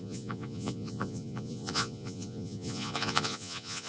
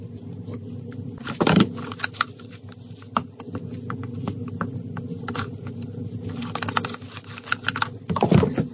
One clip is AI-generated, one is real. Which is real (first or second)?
second